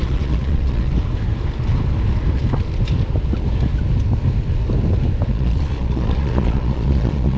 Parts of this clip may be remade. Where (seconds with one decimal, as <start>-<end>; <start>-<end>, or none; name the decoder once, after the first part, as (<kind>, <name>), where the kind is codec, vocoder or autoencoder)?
0.0-0.9 (vocoder, Vocos); 5.3-7.4